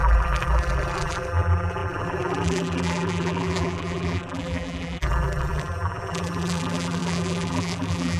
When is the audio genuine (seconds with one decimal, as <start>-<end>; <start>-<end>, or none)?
none